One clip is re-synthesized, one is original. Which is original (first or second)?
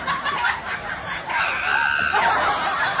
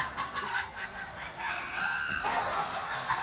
first